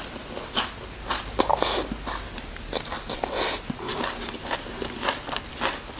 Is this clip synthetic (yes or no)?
no